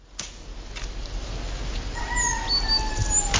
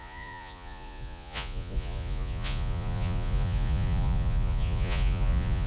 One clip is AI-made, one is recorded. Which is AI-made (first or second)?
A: second